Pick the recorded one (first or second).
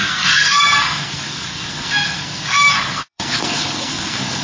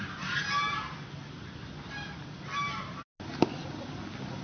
second